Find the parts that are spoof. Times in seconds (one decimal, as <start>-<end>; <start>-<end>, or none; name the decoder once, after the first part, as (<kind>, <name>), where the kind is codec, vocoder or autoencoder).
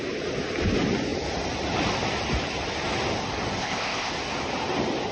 3.6-4.1 (codec, ZipCodec)